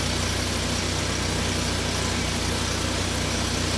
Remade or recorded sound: recorded